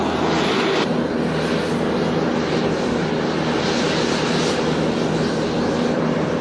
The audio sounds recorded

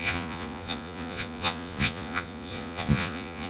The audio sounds remade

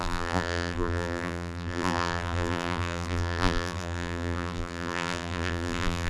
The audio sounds remade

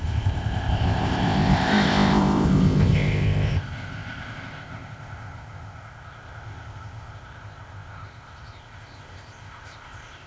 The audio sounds remade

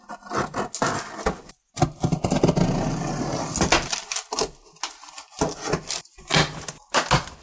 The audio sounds recorded